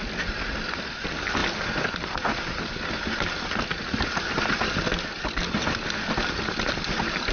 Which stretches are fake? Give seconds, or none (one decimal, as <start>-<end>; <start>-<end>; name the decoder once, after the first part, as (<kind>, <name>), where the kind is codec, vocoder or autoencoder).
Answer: none